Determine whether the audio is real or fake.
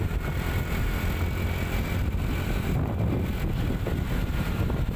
real